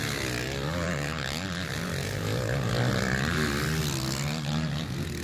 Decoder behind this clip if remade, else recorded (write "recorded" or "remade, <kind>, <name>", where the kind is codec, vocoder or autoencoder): recorded